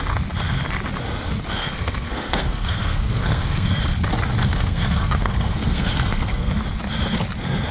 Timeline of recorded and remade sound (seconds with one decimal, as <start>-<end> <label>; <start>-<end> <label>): 0.0-1.6 recorded; 1.6-3.8 remade; 3.8-4.4 recorded; 4.4-6.5 remade; 6.5-7.7 recorded